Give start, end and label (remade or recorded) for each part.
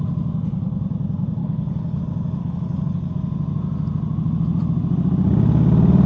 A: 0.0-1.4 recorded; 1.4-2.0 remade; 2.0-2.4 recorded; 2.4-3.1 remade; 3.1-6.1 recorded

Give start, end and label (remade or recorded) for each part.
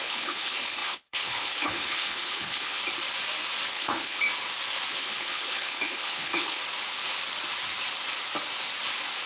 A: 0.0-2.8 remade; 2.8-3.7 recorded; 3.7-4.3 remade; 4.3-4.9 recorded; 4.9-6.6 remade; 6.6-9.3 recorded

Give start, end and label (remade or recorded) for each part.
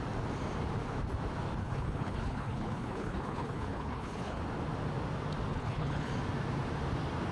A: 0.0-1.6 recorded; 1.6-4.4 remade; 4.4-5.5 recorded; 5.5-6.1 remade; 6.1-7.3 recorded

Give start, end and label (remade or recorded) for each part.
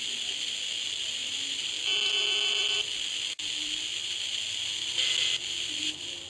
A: 0.0-6.3 recorded